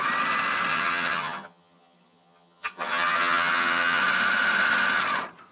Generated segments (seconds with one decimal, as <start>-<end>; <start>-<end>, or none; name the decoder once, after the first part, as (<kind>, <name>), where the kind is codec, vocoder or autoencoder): 0.7-4.0 (vocoder, HiFi-GAN)